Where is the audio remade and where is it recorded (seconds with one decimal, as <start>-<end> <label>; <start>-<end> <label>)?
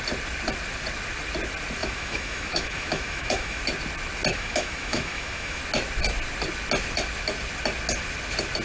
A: 0.0-1.8 recorded; 1.8-3.6 remade; 3.6-4.3 recorded; 4.3-5.6 remade; 5.6-8.6 recorded